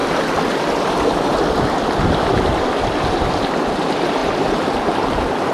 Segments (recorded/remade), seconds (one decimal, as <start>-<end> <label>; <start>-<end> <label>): 0.0-5.5 recorded